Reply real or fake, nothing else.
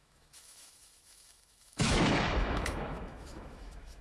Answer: fake